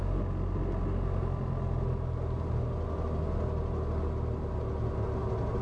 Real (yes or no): yes